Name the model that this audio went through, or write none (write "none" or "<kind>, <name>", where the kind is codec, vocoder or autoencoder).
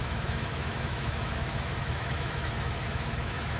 autoencoder, DAC-VAE